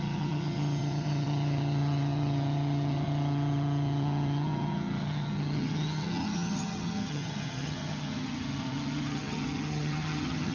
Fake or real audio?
fake